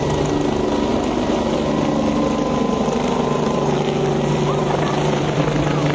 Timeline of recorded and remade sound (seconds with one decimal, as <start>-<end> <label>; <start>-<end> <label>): 0.0-4.6 recorded; 4.6-5.4 remade; 5.4-5.9 recorded